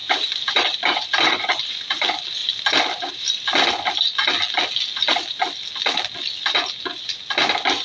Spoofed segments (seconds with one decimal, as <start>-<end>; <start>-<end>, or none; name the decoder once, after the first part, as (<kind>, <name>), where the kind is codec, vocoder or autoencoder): 0.0-1.8 (vocoder, BigVGAN v2)